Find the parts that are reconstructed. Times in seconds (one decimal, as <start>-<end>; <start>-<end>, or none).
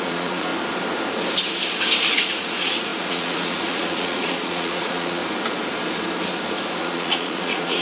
0.0-0.5; 2.1-5.2; 6.8-7.8